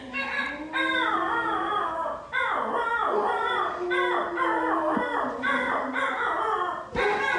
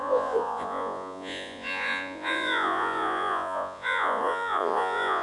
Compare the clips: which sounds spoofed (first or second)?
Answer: second